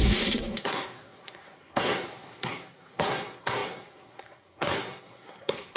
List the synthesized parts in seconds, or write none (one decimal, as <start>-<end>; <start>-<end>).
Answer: 0.0-5.8